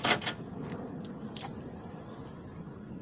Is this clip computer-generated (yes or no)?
no